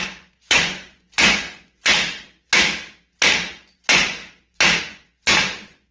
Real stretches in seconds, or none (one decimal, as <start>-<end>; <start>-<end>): 1.9-3.5; 4.2-4.8